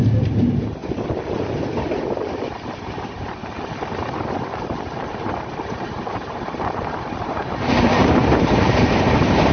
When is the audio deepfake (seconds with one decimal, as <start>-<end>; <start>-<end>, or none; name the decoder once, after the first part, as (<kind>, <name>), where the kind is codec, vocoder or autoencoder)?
0.0-0.8 (vocoder, BigVGAN v2); 2.3-3.4; 5.1-9.5